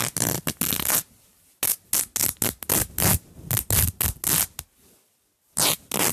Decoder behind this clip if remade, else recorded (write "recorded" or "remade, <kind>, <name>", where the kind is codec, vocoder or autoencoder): recorded